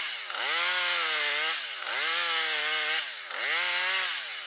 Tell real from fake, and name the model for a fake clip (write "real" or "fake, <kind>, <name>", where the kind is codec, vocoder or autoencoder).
real